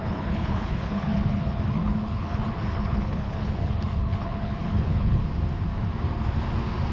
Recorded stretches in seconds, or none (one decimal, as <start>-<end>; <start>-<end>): 5.2-6.9